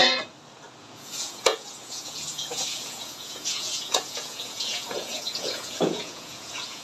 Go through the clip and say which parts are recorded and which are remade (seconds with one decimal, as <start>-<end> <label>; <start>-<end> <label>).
0.0-0.8 recorded; 0.8-6.8 remade

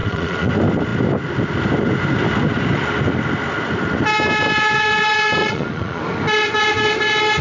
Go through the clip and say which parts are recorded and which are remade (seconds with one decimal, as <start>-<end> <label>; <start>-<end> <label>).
0.0-0.5 remade; 0.5-5.4 recorded; 5.4-6.0 remade; 6.0-7.4 recorded

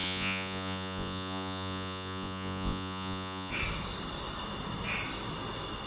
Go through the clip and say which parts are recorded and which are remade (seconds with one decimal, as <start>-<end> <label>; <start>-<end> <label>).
0.0-3.5 remade; 3.5-5.9 recorded